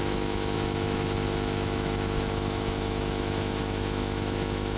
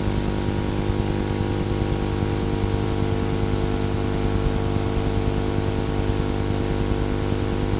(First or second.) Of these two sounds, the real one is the second